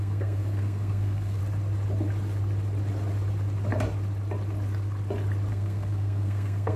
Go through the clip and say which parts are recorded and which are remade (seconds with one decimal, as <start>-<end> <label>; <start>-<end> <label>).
0.0-1.4 remade; 1.4-5.5 recorded; 5.5-6.8 remade